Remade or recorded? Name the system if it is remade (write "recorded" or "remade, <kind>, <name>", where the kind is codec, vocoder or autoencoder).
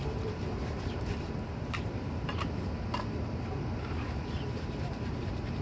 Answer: remade, vocoder, BigVGAN v2